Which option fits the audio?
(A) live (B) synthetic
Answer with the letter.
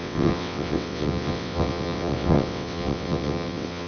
B